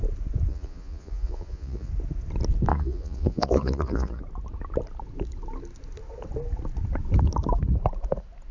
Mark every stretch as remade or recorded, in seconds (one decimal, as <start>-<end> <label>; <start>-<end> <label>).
0.0-0.5 recorded; 0.5-1.9 remade; 1.9-2.7 recorded; 2.7-4.2 remade; 4.2-8.5 recorded